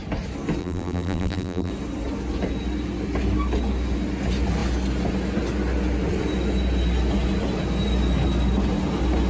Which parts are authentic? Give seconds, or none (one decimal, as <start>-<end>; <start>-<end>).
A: 0.0-0.6; 1.7-9.3